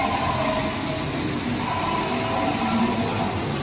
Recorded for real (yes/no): yes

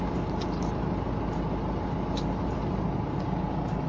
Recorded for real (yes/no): yes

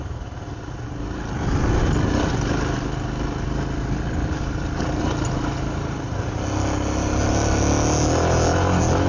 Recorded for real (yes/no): yes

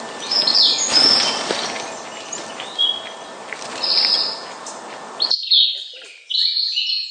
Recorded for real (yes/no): yes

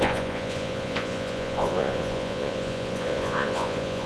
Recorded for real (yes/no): no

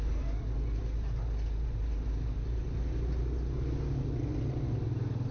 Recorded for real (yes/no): yes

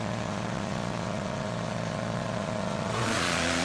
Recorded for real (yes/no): no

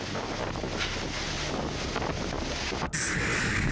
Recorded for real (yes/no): yes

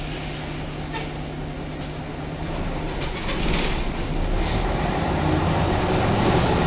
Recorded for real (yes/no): yes